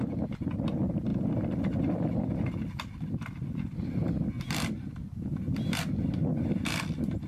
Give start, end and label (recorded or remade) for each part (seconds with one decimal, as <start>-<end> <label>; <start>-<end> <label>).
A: 0.0-7.3 recorded